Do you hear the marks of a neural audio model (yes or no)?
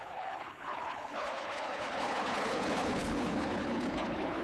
yes